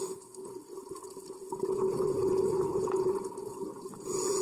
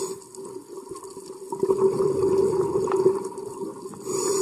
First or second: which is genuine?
second